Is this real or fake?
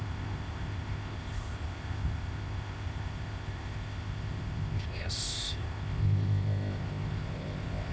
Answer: fake